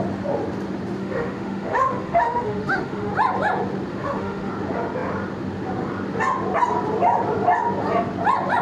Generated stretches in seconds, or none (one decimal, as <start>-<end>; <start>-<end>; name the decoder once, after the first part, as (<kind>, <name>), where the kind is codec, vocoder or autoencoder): 1.0-3.1 (autoencoder, DAC-VAE); 3.9-4.5